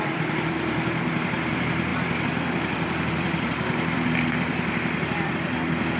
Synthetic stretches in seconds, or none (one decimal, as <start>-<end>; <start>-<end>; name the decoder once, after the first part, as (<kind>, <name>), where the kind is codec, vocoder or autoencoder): 0.0-6.0 (vocoder, BigVGAN v2)